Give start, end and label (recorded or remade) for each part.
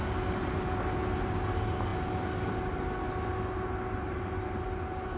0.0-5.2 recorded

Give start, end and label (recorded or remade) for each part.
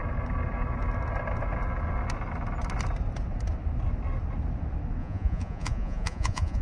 0.0-5.0 recorded; 5.0-6.6 remade